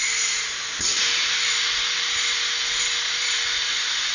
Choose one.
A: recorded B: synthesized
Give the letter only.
A